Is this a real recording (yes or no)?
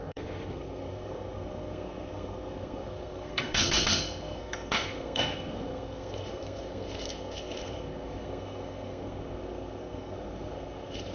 no